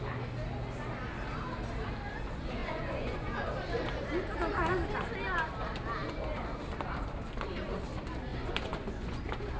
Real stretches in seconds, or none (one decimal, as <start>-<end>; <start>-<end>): 0.0-2.6; 3.5-8.3; 9.2-9.6